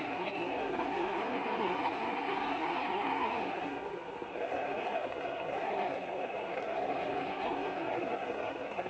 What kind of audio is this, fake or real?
fake